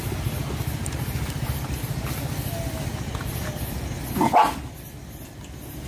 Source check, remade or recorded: recorded